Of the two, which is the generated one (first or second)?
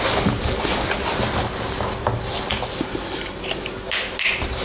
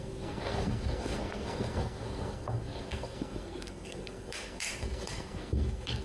second